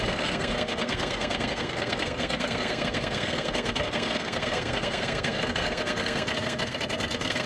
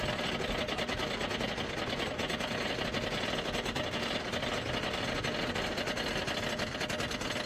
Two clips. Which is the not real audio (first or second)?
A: first